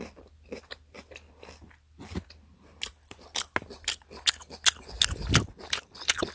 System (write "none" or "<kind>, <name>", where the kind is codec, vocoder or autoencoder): none